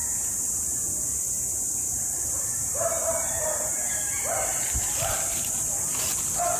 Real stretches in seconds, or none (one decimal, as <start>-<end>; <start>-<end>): 0.6-1.9; 5.2-6.6